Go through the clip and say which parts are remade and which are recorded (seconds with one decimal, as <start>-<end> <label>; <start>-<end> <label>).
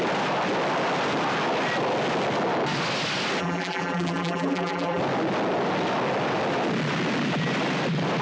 0.0-3.4 recorded; 3.4-5.0 remade; 5.0-8.2 recorded